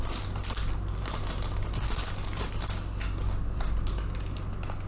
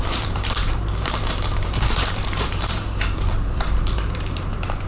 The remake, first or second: second